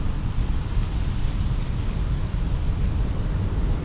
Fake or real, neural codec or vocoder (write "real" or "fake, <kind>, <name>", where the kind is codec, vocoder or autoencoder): real